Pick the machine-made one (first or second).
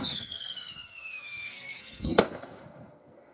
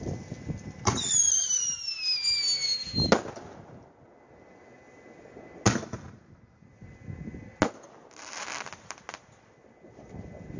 first